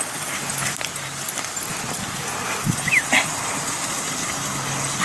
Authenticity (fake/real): real